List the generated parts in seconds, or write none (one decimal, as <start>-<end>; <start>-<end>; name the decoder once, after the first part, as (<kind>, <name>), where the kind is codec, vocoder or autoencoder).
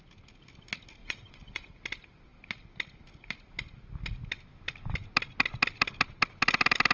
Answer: 1.0-1.7 (vocoder, WaveNeXt)